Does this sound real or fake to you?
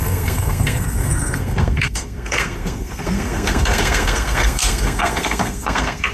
fake